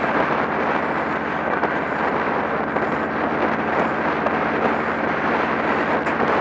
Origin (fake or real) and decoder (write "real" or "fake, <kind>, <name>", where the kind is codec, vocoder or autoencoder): real